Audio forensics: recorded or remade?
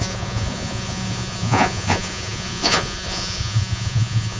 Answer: remade